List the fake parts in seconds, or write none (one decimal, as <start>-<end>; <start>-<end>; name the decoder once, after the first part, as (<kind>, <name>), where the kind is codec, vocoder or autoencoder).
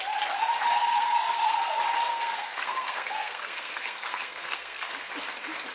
0.8-1.7 (codec, SNAC); 2.1-5.1